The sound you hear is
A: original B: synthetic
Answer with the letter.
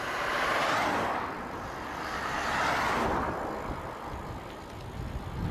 A